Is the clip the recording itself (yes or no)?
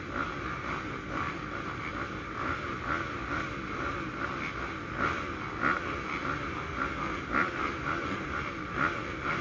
yes